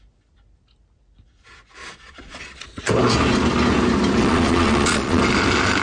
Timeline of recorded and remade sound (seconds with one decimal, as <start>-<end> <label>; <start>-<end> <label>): 0.0-1.8 recorded; 1.8-2.9 remade; 2.9-4.2 recorded; 4.2-5.2 remade; 5.2-5.8 recorded

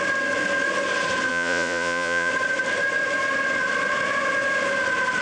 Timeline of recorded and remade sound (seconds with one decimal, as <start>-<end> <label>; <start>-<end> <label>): 0.0-1.3 recorded; 1.3-2.3 remade; 2.3-5.2 recorded

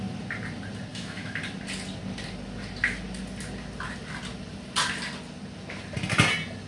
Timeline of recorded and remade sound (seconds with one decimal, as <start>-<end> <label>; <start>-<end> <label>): 0.0-0.9 recorded; 0.9-1.4 remade; 1.4-6.7 recorded

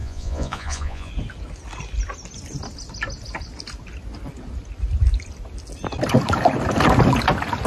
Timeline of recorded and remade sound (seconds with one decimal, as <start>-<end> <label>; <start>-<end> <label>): 0.0-1.1 remade; 1.1-7.7 recorded

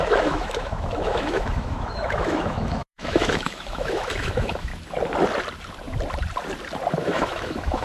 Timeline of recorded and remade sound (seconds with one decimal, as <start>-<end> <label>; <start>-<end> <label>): 0.0-4.7 remade; 4.7-7.0 recorded; 7.0-7.8 remade

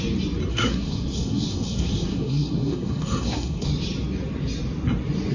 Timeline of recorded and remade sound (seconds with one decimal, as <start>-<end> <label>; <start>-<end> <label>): 0.0-0.5 recorded; 0.5-3.7 remade; 3.7-5.3 recorded

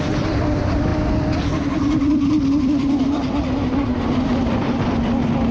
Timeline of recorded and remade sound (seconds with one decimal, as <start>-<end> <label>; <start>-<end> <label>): 0.0-5.5 remade